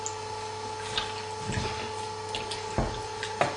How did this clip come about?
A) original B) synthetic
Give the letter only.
A